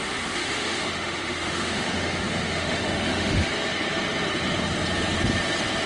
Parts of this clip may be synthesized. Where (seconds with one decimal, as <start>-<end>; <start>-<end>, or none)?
0.0-3.5